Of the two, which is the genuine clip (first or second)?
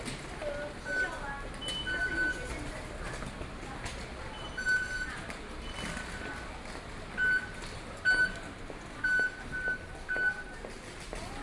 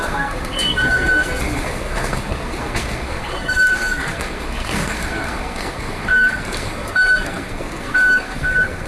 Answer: first